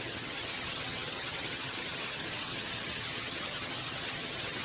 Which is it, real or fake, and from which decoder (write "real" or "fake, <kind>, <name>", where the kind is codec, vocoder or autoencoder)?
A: fake, vocoder, HiFi-GAN